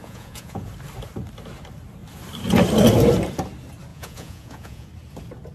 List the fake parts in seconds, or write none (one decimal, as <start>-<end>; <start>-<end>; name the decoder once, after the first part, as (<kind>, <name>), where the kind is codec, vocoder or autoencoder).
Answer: 0.0-0.7 (vocoder, Vocos); 3.9-4.9